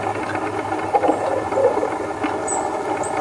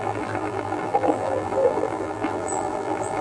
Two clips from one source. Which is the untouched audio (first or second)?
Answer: first